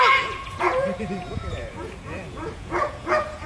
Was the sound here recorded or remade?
remade